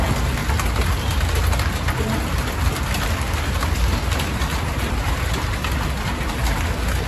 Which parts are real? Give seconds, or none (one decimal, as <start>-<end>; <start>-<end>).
0.0-7.1